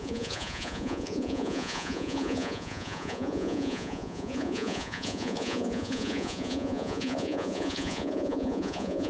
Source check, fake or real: fake